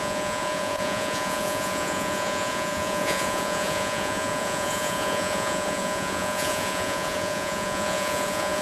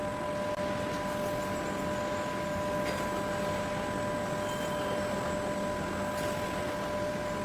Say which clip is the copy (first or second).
first